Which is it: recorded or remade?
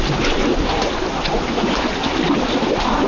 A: recorded